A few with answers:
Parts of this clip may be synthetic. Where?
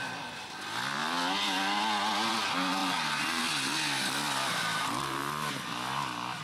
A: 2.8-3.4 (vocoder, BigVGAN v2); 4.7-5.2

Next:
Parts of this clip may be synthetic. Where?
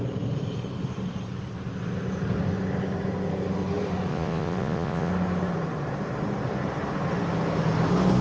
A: 4.1-5.1 (vocoder, Vocos)